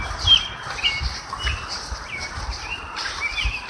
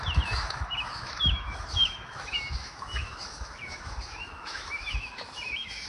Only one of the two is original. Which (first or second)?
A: first